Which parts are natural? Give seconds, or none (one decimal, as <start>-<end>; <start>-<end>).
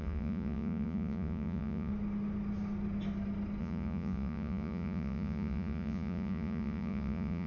1.9-3.6